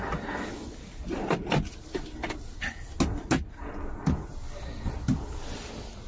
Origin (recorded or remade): recorded